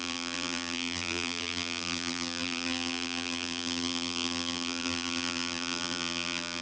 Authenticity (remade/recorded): remade